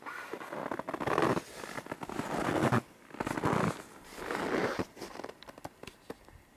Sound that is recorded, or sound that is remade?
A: recorded